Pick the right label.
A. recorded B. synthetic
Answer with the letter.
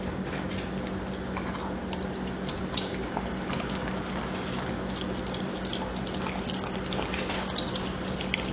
A